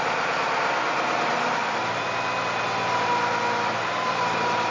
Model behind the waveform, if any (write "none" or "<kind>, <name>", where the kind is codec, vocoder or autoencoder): none